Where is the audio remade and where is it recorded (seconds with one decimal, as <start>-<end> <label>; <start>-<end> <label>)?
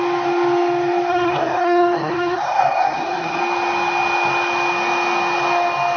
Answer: 0.0-1.1 recorded; 1.1-3.4 remade; 3.4-6.0 recorded